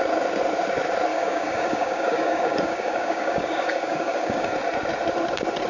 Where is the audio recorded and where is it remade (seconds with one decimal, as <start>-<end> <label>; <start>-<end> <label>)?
0.0-1.1 recorded; 1.1-4.5 remade; 4.5-5.7 recorded